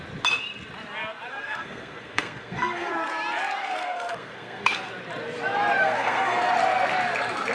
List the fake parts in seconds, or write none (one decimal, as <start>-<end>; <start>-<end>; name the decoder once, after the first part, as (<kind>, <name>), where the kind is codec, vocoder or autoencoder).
1.3-2.9 (codec, SNAC); 3.6-4.9; 5.8-6.4